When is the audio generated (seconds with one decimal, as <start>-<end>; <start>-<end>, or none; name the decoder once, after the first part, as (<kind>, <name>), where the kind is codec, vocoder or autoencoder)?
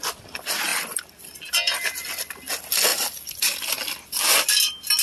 0.7-2.3 (vocoder, BigVGAN v2)